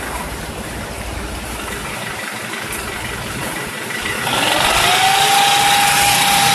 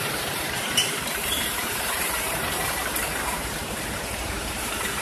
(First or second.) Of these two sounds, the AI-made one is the second